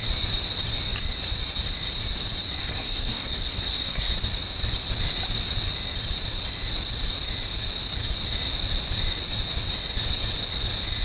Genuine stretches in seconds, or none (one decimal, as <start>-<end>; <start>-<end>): 0.0-2.6; 4.1-11.0